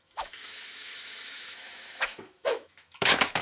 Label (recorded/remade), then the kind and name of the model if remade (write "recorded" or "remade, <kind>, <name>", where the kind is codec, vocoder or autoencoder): remade, autoencoder, DAC-VAE